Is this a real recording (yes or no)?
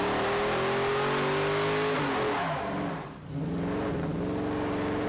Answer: yes